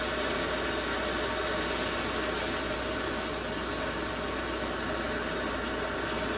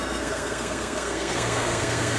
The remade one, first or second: second